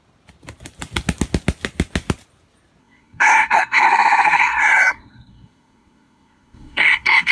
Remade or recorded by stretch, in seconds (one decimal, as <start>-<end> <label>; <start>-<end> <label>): 0.0-2.8 recorded; 2.8-7.3 remade